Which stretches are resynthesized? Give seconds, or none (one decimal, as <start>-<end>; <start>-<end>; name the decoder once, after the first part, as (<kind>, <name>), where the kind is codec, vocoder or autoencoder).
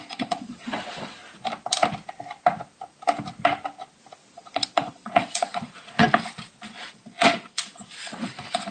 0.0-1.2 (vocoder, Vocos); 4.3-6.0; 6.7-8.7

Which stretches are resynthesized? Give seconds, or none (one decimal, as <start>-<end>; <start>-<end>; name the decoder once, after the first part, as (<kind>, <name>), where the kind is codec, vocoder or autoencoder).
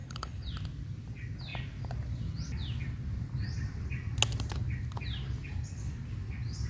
0.0-0.5 (codec, HILCodec)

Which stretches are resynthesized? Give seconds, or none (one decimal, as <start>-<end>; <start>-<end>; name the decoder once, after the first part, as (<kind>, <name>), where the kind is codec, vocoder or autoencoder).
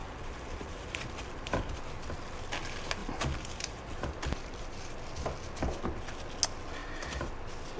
0.0-1.8 (vocoder, BigVGAN v2); 3.0-4.7; 6.8-7.3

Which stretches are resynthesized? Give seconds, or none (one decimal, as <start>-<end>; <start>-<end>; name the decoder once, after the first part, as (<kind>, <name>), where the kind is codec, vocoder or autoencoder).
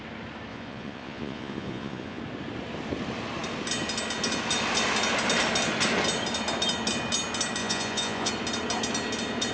0.5-2.2 (vocoder, Vocos); 7.6-8.3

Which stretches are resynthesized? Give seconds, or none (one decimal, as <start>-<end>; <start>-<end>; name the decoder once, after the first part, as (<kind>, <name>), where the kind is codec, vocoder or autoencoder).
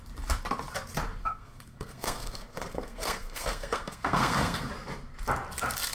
1.2-4.7 (codec, SNAC)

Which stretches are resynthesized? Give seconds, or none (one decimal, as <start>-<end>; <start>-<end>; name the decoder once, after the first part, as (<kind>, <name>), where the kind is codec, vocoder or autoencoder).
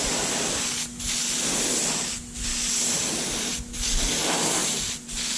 4.6-5.4 (vocoder, BigVGAN v2)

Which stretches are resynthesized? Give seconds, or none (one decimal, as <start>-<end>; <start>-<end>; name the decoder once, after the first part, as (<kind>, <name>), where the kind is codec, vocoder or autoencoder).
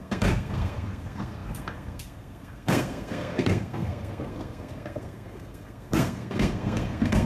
0.0-7.3 (codec, SNAC)